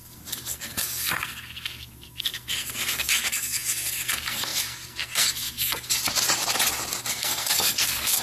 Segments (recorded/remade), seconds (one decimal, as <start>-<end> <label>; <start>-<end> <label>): 0.0-5.9 remade; 5.9-7.1 recorded; 7.1-8.2 remade